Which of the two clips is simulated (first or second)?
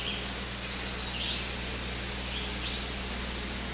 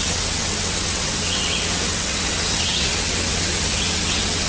second